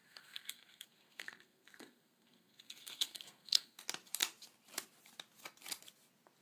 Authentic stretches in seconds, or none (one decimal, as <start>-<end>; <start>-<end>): 3.8-6.4